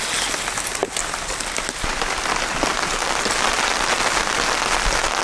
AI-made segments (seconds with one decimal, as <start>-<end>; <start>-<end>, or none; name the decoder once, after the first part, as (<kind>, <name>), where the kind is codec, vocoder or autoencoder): none